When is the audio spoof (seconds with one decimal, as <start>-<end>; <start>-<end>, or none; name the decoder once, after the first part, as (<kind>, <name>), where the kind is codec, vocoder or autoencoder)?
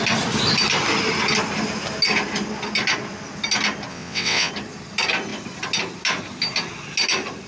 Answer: 3.9-4.5 (vocoder, WaveNeXt)